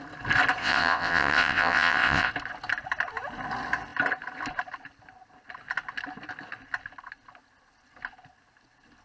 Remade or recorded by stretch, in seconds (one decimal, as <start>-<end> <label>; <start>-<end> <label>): 0.0-0.6 recorded; 0.6-2.3 remade; 2.3-9.0 recorded